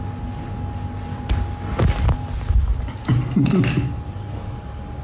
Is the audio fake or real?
real